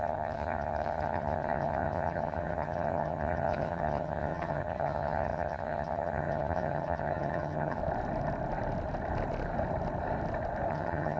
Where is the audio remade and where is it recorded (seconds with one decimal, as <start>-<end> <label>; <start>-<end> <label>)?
0.0-7.8 remade; 7.8-10.7 recorded; 10.7-11.2 remade